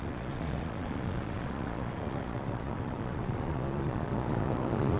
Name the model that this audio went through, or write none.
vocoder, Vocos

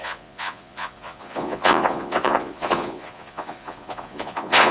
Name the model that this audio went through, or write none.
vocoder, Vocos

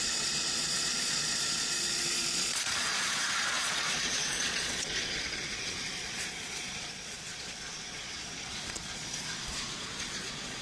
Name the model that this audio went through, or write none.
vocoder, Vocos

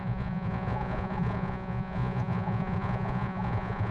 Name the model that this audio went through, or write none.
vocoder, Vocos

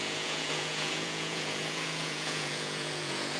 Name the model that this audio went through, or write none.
vocoder, Vocos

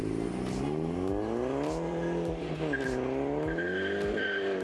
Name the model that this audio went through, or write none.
none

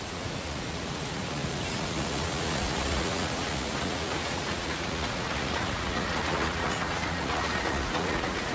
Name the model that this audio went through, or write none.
vocoder, Vocos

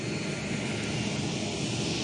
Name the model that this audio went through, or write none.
none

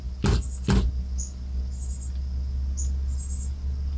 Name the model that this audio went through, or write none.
none